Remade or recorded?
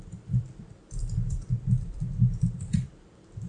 remade